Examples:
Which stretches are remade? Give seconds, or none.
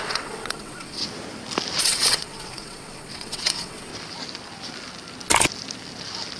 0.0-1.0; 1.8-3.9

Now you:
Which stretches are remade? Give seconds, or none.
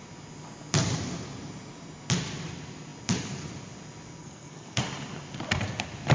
4.2-4.8